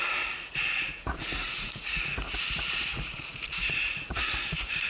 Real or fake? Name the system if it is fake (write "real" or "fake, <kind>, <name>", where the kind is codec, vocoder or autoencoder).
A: fake, vocoder, Vocos